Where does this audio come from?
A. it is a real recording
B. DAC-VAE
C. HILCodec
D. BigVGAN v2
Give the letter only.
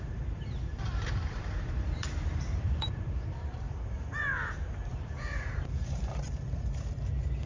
D